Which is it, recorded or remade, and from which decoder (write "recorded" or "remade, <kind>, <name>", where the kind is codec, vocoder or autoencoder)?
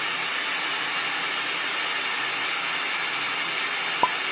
recorded